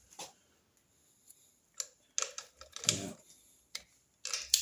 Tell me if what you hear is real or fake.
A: real